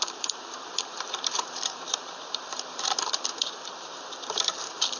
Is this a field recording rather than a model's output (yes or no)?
no